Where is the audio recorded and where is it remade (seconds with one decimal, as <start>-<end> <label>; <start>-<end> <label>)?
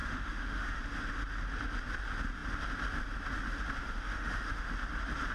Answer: 0.0-0.8 remade; 0.8-3.8 recorded; 3.8-4.7 remade; 4.7-5.3 recorded